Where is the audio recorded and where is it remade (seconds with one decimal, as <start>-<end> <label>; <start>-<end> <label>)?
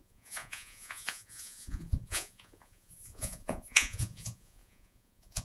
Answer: 0.0-5.4 remade